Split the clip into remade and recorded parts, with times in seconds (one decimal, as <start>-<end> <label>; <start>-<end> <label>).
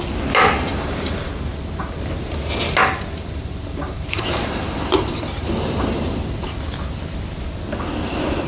0.0-0.7 recorded; 0.7-1.3 remade; 1.3-2.8 recorded; 2.8-5.5 remade; 5.5-8.5 recorded